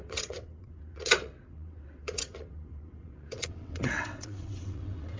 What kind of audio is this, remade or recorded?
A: remade